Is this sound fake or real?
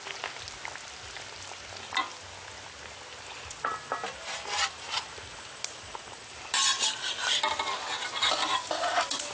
real